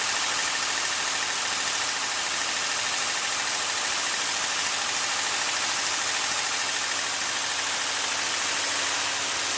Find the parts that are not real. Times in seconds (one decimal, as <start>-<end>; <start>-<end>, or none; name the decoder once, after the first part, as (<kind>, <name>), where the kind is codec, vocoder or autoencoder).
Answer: none